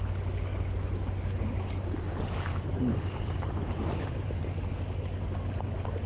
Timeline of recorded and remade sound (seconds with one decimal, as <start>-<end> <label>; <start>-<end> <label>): 0.0-2.5 recorded; 2.5-4.4 remade; 4.4-6.1 recorded